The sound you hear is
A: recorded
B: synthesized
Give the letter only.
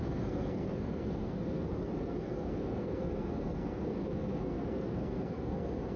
B